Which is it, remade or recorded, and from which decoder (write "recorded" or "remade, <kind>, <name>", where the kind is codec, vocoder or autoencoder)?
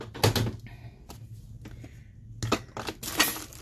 recorded